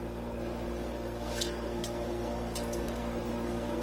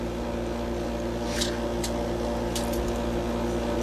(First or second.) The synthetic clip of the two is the first